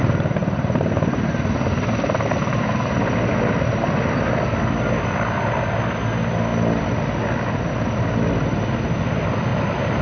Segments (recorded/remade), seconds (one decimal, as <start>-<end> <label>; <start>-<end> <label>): 0.0-0.4 recorded; 0.4-1.3 remade; 1.3-9.5 recorded; 9.5-10.0 remade